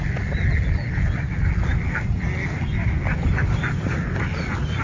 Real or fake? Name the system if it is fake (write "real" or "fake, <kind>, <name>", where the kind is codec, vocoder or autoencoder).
real